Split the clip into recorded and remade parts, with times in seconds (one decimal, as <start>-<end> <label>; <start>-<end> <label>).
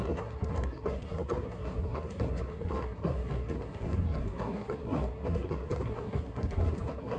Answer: 0.0-7.2 remade